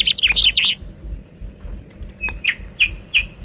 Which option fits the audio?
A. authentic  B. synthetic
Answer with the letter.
A